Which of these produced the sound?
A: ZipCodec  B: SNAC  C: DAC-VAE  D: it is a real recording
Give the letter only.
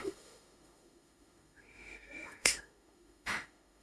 C